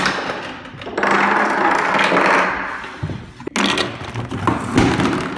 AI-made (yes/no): no